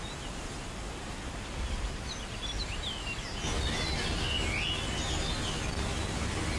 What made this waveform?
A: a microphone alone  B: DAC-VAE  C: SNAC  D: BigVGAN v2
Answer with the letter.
A